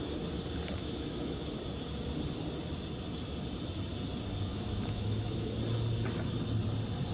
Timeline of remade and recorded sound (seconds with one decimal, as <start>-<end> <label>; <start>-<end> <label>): 0.0-0.8 recorded; 0.8-1.4 remade; 1.4-4.5 recorded; 4.5-5.6 remade; 5.6-7.1 recorded